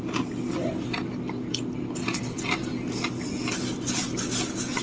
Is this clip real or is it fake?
real